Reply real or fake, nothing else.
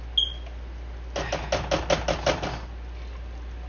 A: real